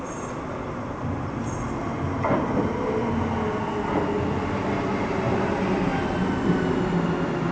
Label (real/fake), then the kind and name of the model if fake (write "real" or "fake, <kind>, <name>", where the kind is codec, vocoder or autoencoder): real